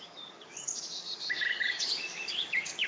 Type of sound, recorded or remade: remade